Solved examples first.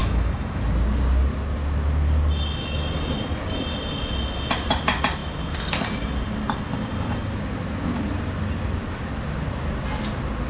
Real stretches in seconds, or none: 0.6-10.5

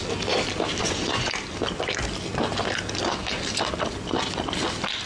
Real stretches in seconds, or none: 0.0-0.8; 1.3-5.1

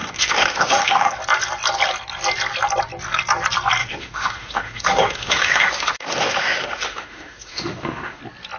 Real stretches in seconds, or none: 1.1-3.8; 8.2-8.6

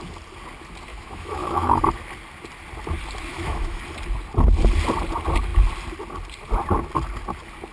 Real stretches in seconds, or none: 0.0-0.9; 1.8-3.3; 3.8-7.7

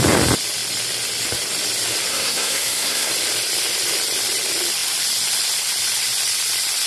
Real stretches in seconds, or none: 0.0-2.1; 3.1-6.9